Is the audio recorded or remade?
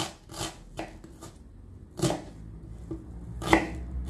recorded